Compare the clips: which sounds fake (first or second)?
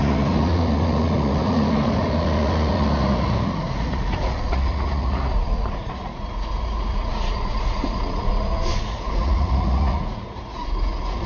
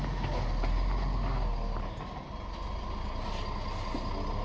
first